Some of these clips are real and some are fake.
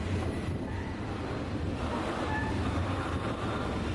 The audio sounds fake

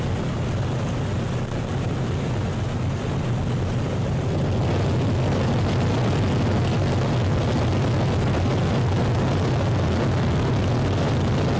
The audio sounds real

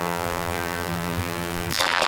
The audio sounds fake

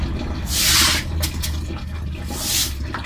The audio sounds real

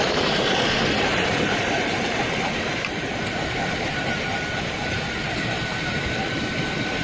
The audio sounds fake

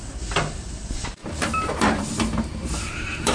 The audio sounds fake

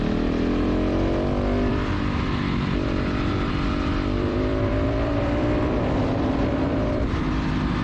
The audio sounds fake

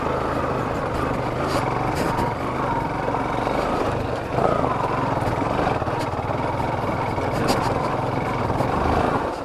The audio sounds fake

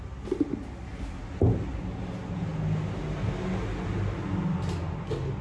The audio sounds real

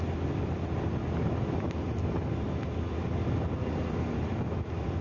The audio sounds real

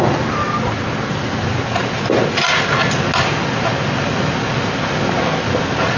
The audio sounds real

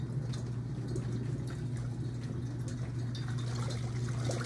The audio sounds real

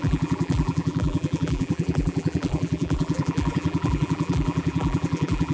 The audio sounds fake